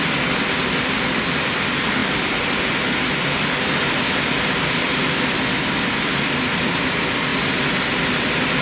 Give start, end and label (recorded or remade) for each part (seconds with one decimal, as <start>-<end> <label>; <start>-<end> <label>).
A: 0.0-8.6 recorded